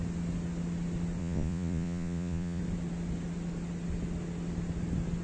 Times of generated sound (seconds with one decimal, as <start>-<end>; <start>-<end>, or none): 1.2-2.6